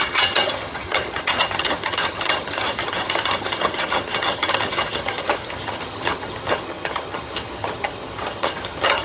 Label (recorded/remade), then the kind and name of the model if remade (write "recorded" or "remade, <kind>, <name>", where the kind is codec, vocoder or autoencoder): remade, vocoder, HiFi-GAN